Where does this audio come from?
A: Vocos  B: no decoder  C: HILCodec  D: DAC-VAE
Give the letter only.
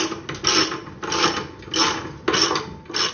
B